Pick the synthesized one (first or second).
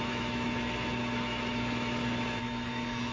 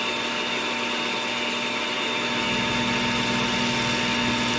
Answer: first